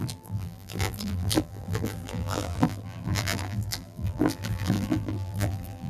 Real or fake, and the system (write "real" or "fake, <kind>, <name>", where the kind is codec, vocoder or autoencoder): fake, vocoder, BigVGAN v2